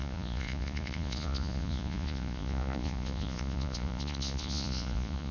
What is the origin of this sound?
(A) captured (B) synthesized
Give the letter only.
B